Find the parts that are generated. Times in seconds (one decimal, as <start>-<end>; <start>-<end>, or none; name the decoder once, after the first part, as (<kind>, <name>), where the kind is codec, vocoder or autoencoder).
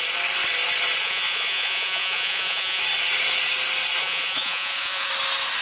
1.0-2.8 (vocoder, Vocos); 4.0-5.1